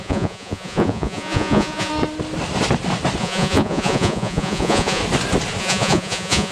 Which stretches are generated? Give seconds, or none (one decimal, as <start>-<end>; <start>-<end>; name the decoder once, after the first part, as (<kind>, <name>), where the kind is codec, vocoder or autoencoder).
0.0-1.9 (vocoder, Vocos); 3.2-5.0; 5.6-6.5